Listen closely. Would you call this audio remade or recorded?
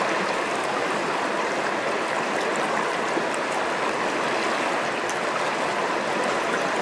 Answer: recorded